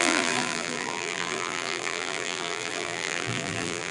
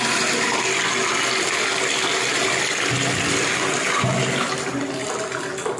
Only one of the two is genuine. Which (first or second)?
second